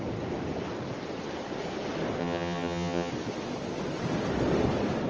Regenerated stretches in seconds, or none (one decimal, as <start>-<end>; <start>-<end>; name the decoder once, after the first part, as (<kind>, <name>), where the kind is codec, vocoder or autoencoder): 2.2-3.1 (vocoder, HiFi-GAN)